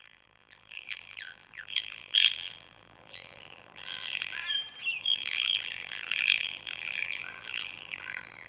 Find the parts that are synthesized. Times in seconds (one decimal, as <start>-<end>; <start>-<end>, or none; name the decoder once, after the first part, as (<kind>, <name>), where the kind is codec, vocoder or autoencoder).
0.0-4.4 (vocoder, BigVGAN v2); 5.0-8.5